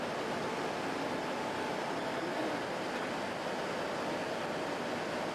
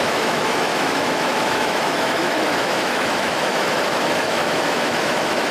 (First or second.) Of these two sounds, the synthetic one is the second